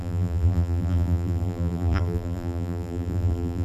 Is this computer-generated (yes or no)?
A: yes